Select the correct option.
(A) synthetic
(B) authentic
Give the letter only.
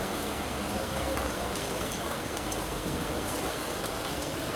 A